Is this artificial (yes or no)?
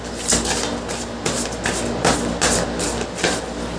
no